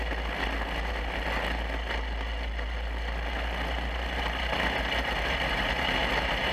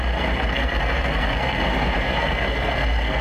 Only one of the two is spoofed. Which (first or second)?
second